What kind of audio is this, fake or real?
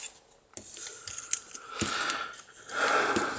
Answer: real